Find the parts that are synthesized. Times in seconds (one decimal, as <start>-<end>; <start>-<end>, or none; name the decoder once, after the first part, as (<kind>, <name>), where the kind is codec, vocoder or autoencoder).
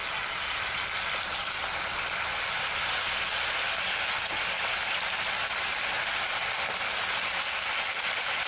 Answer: none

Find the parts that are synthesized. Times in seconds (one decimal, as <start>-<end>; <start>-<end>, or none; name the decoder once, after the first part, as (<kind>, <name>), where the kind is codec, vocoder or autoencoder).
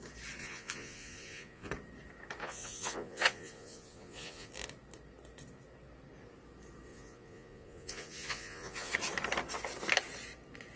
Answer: 0.4-1.7 (vocoder, Vocos); 2.4-4.5; 6.9-8.9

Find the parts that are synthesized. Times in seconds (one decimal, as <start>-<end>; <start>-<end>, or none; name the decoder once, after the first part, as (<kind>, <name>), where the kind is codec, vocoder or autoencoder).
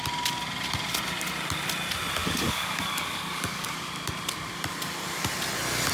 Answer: 2.2-3.9 (codec, DAC)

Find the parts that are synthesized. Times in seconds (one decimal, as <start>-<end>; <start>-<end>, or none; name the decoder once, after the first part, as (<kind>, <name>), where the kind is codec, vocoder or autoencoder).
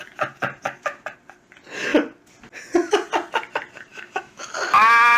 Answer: 3.9-4.5 (autoencoder, DAC-VAE)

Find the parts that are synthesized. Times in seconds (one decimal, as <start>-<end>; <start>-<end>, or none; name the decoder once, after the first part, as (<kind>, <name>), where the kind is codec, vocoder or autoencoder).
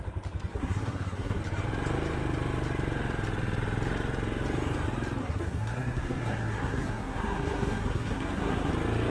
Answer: 0.5-1.4 (codec, SNAC); 5.2-8.7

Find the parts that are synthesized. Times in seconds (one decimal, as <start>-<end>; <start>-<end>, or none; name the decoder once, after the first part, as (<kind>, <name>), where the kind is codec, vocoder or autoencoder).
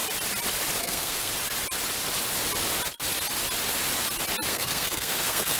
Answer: 0.8-1.3 (codec, SNAC); 4.5-5.6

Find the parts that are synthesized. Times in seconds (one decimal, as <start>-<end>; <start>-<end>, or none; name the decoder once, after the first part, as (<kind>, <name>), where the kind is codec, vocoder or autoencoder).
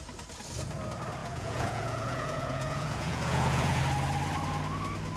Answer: 1.2-3.8 (vocoder, Vocos)